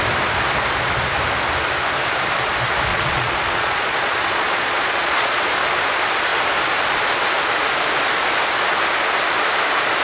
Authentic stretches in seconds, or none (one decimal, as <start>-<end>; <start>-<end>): 0.0-2.9; 5.4-10.0

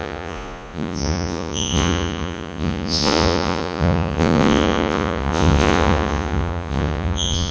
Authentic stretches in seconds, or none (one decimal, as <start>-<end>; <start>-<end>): none

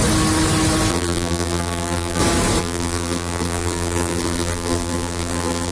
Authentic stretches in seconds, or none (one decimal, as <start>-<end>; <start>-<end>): 0.0-0.9; 2.2-2.6

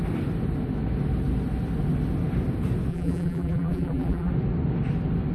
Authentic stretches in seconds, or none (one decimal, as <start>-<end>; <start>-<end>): 0.0-2.9; 4.3-5.3

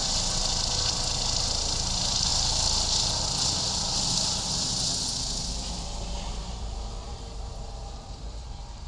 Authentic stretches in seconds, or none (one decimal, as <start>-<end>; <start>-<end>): 2.3-4.5